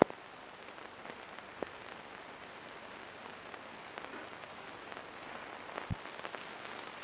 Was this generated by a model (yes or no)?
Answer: no